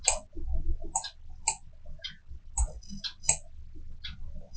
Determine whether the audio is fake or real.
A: real